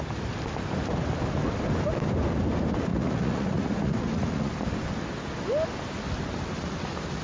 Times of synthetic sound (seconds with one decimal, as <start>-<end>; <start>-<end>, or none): 2.9-4.5